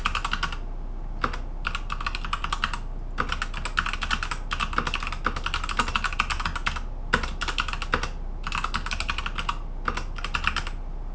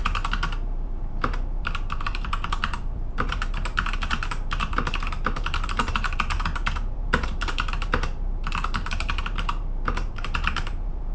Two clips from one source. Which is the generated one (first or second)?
second